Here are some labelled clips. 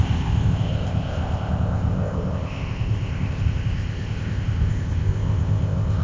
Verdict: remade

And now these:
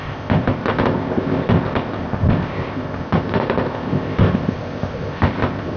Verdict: remade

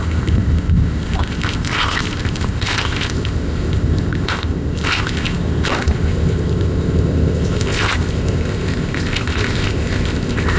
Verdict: remade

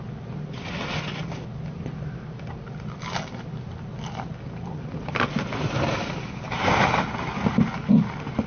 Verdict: recorded